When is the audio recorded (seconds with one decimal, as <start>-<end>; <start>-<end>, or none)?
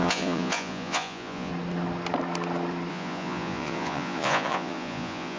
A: 1.5-2.9